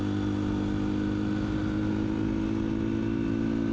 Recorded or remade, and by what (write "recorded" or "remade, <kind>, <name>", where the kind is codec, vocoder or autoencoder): recorded